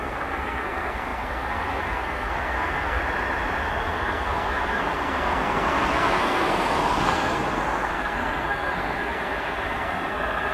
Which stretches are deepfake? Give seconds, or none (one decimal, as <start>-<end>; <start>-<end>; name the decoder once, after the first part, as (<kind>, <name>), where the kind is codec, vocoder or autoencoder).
0.0-3.0 (codec, SNAC); 3.7-10.5